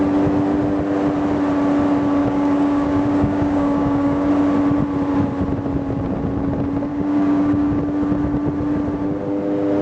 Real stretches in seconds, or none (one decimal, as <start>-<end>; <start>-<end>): 0.0-2.2; 4.3-6.9; 7.8-9.8